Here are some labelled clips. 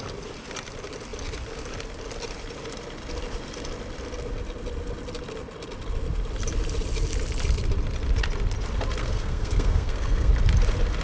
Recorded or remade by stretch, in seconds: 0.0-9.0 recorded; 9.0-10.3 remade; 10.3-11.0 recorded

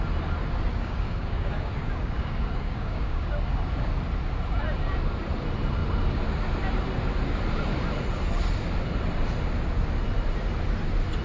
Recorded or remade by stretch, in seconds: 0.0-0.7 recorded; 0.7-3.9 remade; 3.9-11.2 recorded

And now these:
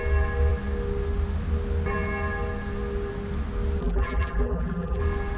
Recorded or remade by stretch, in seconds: 0.0-3.8 recorded; 3.8-5.0 remade; 5.0-5.4 recorded

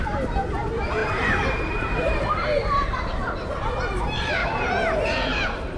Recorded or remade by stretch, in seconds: 0.0-4.4 remade; 4.4-5.8 recorded